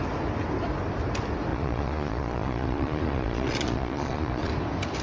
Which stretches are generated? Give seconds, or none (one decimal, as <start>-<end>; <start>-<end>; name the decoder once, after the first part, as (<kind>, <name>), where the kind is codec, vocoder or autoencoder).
1.5-4.5 (vocoder, Vocos)